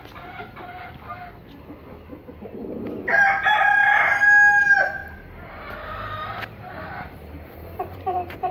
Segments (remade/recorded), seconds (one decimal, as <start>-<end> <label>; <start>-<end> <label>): 0.0-5.0 recorded; 5.0-8.5 remade